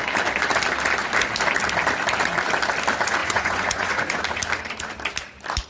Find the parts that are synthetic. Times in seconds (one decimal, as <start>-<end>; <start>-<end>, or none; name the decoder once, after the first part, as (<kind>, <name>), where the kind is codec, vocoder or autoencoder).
3.2-4.2 (vocoder, Vocos)